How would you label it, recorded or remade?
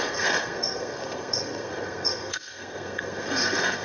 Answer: remade